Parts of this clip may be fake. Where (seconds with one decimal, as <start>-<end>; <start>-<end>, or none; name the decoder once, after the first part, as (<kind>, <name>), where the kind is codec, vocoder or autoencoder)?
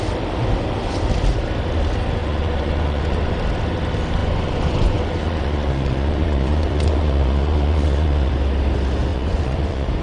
2.2-3.3 (vocoder, Vocos); 4.2-8.3; 9.1-10.0